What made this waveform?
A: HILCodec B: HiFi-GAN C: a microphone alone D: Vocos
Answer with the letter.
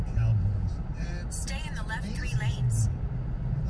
C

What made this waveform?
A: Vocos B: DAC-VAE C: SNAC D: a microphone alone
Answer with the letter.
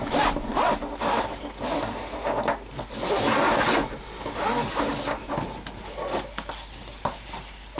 D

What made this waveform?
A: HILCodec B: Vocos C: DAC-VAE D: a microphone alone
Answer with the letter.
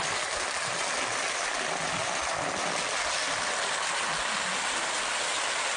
D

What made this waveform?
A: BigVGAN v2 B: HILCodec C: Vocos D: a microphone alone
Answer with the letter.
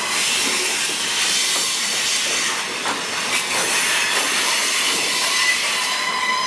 D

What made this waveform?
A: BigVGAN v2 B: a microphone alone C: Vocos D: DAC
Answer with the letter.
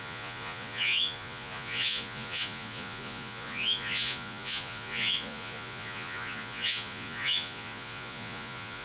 C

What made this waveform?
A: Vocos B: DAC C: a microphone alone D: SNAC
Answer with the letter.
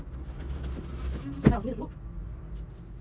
C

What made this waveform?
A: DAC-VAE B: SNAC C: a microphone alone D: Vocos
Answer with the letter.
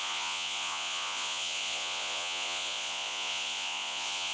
D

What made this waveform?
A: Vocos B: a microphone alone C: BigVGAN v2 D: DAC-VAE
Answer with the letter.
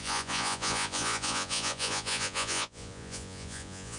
A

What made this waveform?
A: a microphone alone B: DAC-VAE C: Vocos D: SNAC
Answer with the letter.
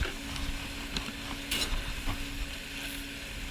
A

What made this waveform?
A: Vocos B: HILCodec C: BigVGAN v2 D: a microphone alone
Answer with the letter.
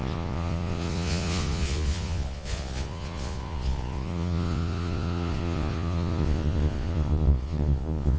A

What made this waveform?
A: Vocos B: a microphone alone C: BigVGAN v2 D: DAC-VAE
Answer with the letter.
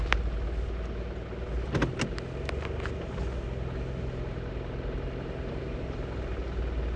B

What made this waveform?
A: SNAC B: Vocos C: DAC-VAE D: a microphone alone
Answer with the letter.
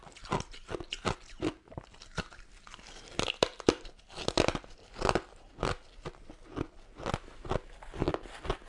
D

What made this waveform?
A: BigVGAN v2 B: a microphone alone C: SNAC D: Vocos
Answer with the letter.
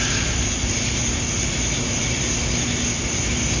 B